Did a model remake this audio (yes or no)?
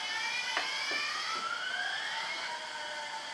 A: no